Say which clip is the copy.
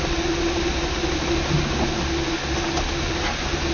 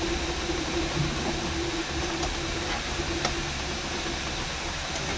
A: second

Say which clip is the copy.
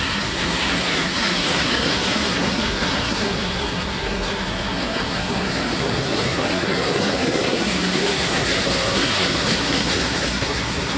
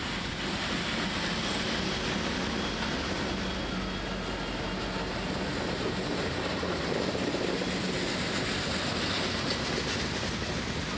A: first